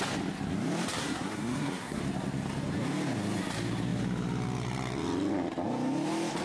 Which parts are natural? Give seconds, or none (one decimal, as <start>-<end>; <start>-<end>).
0.0-1.0; 2.0-6.4